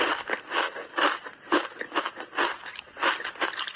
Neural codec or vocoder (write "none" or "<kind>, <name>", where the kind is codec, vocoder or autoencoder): none